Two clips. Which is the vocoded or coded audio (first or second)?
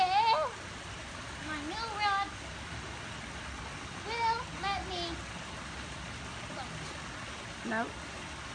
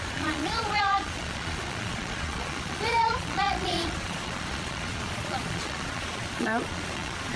second